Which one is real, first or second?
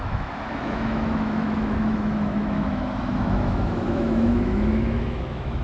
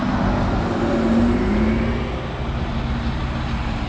second